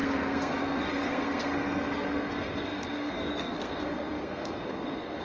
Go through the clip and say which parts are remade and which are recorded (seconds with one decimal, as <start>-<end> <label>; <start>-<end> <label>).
0.0-5.2 remade